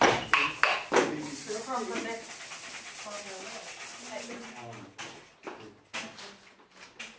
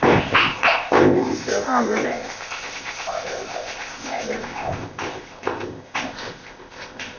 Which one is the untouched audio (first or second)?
first